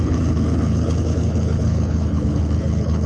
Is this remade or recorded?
remade